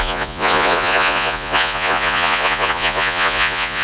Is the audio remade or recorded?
remade